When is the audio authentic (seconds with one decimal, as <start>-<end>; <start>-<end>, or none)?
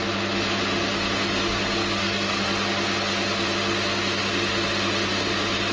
0.0-1.8; 2.4-5.7